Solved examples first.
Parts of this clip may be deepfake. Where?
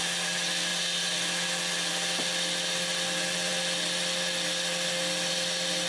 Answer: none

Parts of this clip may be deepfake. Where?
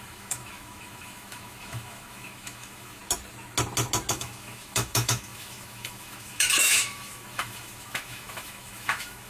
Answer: 0.0-3.0; 4.1-9.3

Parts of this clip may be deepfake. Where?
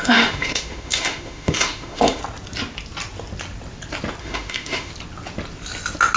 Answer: 0.0-2.2; 4.2-4.9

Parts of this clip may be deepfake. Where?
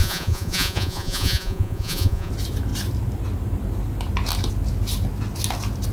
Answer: 0.0-2.3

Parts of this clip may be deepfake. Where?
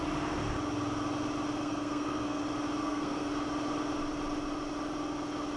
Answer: 1.6-2.4; 2.8-3.3